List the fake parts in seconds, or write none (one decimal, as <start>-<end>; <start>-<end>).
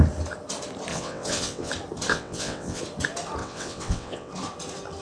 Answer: 0.9-1.7; 2.1-2.8; 3.4-4.3